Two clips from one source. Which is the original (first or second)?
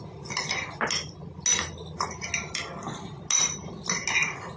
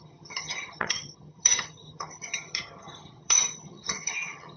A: first